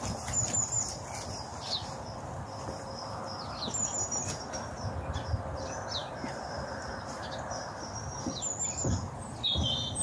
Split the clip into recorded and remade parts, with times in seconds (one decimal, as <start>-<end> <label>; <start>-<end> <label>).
0.0-6.0 recorded; 6.0-6.9 remade; 6.9-10.0 recorded